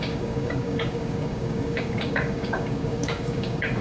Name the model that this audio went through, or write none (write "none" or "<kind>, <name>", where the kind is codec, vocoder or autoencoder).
codec, DAC